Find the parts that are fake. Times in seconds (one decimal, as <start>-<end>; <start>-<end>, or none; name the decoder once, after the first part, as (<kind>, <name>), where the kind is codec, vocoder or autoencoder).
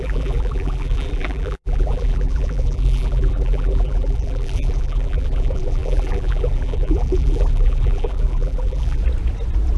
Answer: 0.0-9.0 (vocoder, BigVGAN v2)